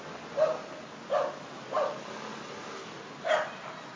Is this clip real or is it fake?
real